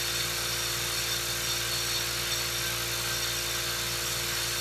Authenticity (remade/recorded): recorded